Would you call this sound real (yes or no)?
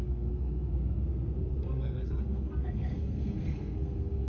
no